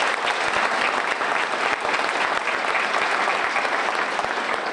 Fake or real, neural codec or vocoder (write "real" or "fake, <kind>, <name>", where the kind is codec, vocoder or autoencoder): real